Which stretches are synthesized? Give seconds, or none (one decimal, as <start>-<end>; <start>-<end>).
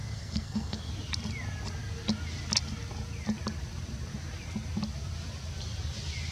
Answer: 0.0-0.9